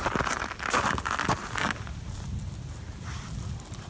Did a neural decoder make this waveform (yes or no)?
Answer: no